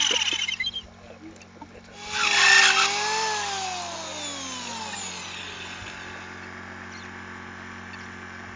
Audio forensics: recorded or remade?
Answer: recorded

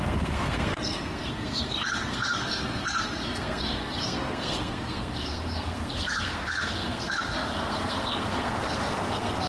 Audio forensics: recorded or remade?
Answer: remade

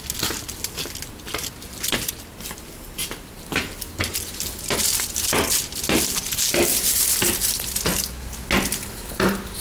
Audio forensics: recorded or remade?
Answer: recorded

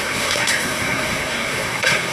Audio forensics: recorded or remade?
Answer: remade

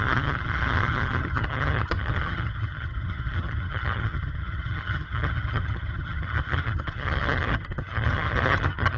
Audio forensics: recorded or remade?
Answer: remade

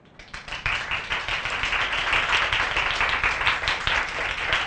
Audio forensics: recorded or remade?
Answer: recorded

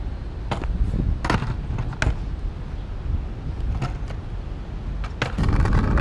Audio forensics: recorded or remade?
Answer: recorded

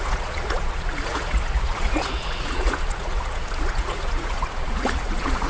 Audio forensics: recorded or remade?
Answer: remade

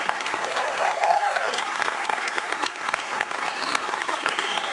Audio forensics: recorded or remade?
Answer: remade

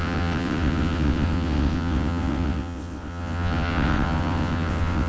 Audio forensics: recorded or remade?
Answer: remade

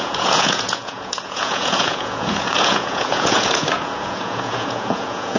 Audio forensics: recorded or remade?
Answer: remade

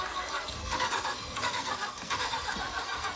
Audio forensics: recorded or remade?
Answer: remade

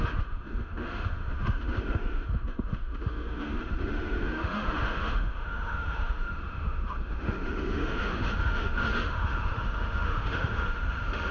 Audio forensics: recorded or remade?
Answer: remade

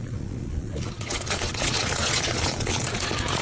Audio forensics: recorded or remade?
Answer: remade